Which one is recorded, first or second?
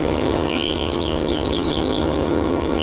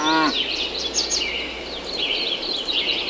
second